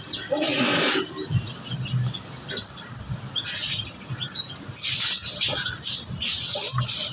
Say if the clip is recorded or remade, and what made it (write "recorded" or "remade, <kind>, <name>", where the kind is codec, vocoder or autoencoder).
recorded